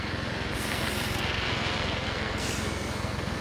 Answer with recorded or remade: remade